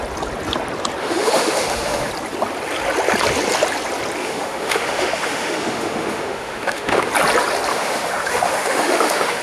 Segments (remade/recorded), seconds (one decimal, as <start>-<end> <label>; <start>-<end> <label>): 0.0-1.0 recorded; 1.0-2.1 remade; 2.1-4.2 recorded; 4.2-7.1 remade; 7.1-7.7 recorded; 7.7-9.4 remade